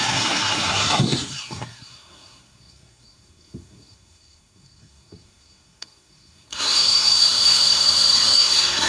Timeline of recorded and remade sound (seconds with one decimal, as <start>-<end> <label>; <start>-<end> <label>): 0.0-8.9 remade